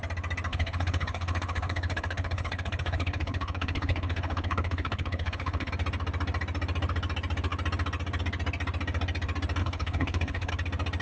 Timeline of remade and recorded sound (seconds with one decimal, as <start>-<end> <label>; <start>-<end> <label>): 0.0-0.5 recorded; 0.5-5.7 remade; 5.7-9.6 recorded; 9.6-10.5 remade; 10.5-11.0 recorded